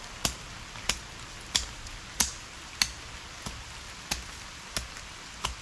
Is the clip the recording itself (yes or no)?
yes